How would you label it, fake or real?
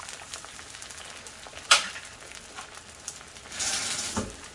real